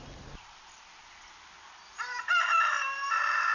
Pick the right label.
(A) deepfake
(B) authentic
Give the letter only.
B